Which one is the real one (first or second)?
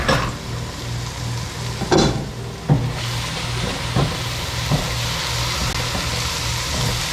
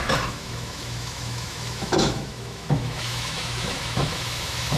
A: first